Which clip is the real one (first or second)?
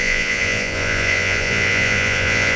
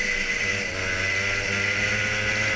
second